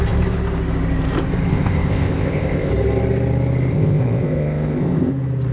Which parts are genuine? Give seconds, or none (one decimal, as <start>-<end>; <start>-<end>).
0.0-1.5; 2.7-3.7; 5.1-5.5

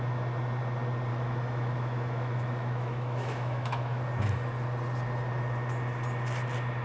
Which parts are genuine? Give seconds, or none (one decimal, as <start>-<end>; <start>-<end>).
0.0-1.1; 4.0-6.8

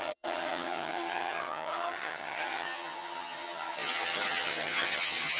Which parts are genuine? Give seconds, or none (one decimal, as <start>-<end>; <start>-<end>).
none

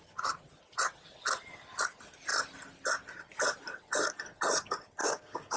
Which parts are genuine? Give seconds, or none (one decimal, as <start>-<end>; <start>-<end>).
0.0-5.0

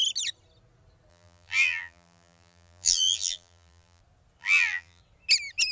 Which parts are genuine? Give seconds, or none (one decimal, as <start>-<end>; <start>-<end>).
0.0-1.1; 4.0-4.4; 5.0-5.7

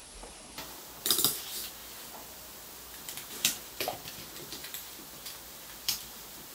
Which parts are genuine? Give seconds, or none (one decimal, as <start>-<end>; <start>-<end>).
0.0-6.5

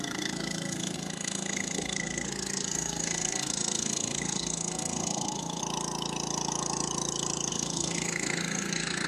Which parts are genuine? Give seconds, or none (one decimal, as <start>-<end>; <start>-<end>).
5.6-7.5

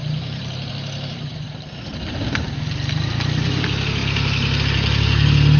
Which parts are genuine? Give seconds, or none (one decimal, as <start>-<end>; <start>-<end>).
0.7-4.0; 4.6-5.6